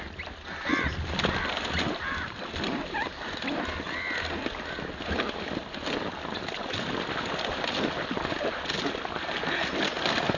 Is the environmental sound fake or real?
real